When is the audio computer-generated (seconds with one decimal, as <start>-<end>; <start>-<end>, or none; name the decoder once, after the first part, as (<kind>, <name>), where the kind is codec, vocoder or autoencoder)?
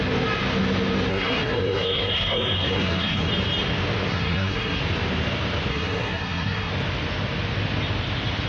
1.1-3.3 (codec, SNAC); 4.1-4.8; 5.7-6.7